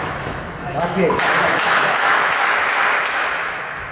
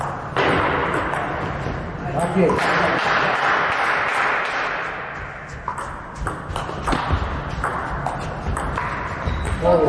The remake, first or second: first